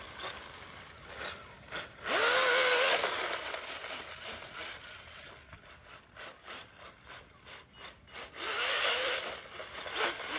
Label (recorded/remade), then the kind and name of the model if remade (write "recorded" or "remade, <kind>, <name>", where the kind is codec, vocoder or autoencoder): recorded